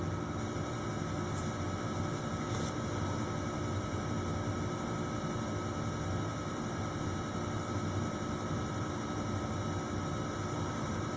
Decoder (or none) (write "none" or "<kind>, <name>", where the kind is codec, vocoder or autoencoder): none